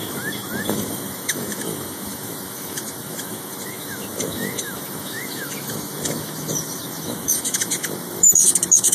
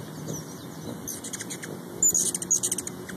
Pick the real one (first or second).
second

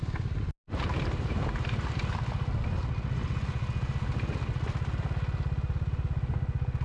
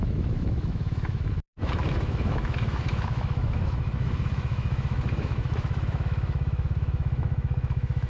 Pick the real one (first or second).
first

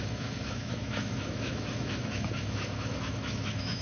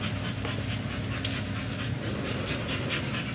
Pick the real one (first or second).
second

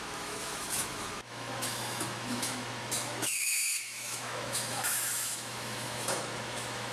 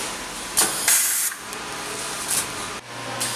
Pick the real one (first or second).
second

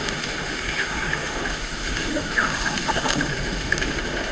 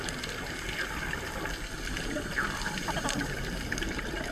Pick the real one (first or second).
second